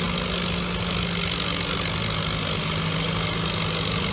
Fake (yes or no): no